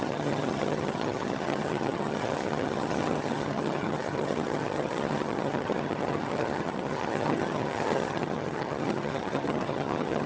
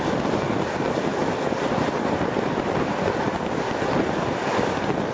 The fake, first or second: first